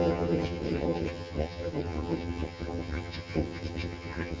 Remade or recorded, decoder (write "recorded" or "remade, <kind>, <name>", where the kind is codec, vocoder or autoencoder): remade, vocoder, HiFi-GAN